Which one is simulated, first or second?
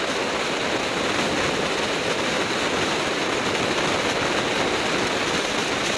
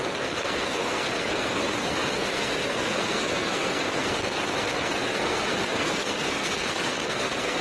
second